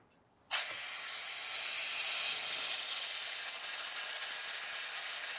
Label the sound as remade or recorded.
recorded